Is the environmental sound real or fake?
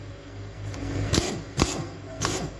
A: fake